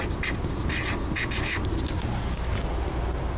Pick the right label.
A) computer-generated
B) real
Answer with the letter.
B